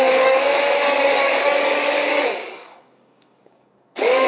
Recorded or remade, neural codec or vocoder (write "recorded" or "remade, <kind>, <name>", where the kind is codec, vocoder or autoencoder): remade, codec, DAC